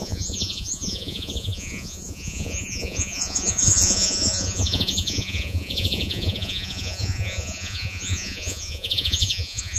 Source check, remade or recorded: remade